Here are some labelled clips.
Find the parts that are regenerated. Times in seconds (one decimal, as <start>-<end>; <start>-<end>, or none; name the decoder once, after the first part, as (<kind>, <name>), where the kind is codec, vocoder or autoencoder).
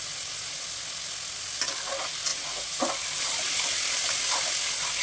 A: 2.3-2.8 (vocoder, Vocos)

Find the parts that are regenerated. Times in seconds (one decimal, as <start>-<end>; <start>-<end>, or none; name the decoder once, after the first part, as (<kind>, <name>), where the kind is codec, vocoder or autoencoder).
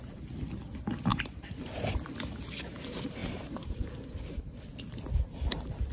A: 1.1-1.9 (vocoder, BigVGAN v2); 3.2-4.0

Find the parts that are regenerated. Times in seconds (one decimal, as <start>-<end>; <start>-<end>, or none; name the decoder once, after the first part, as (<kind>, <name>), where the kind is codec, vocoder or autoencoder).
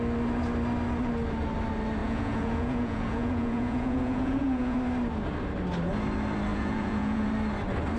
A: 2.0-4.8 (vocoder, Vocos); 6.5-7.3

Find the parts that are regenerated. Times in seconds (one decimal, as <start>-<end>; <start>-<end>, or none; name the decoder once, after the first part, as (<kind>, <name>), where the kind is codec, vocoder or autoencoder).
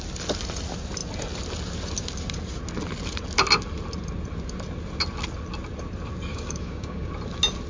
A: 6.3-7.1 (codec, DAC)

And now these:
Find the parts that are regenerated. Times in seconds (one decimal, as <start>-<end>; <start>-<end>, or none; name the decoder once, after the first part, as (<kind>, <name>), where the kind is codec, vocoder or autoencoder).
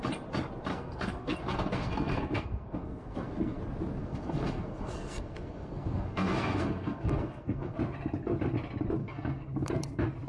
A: 0.7-3.6 (codec, SNAC); 4.0-7.8; 9.0-9.7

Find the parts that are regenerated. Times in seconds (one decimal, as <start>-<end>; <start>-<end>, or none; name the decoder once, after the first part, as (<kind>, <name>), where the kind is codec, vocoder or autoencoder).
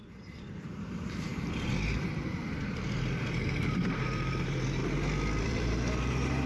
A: 0.0-4.8 (vocoder, BigVGAN v2); 5.4-6.5